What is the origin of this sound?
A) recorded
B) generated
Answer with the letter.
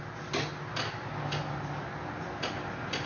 A